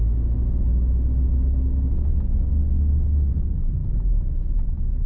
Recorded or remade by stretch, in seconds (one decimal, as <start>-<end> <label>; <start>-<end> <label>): 0.0-0.7 recorded; 0.7-2.1 remade; 2.1-2.6 recorded; 2.6-3.3 remade; 3.3-5.1 recorded